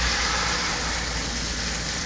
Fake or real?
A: real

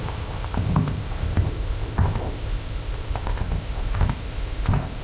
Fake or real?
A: fake